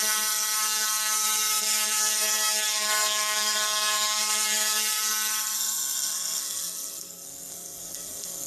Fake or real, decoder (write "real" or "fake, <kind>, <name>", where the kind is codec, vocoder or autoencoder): fake, codec, SNAC